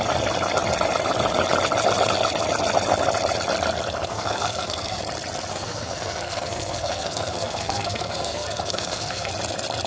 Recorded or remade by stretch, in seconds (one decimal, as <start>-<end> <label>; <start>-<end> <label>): 0.0-4.1 recorded; 4.1-5.0 remade; 5.0-5.5 recorded; 5.5-9.3 remade; 9.3-9.9 recorded